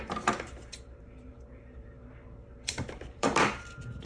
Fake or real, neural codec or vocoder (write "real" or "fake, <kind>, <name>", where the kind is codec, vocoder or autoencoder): fake, vocoder, BigVGAN v2